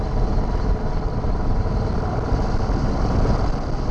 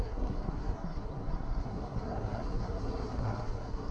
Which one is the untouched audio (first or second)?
first